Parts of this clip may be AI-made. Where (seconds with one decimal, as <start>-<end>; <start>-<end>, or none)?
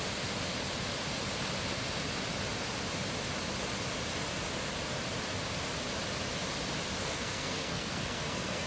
7.0-8.7